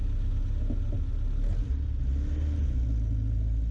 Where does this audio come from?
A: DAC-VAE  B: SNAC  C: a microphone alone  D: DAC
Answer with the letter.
C